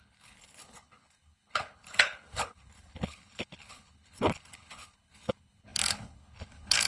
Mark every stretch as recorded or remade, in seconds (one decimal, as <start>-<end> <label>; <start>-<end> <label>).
0.0-6.9 remade